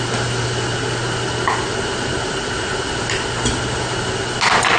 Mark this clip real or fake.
real